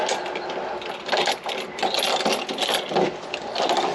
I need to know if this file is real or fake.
real